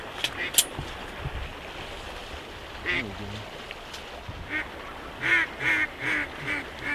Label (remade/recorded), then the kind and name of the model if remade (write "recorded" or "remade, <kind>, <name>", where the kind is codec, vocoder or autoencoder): recorded